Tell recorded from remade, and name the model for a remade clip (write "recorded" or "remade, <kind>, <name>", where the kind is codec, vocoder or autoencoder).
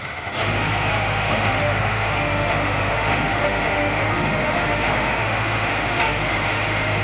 remade, autoencoder, DAC-VAE